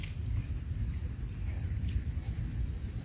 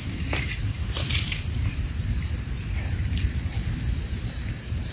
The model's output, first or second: second